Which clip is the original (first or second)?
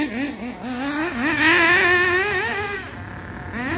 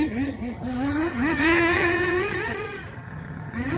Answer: first